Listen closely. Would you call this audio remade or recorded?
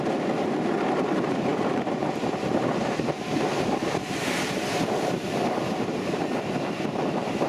remade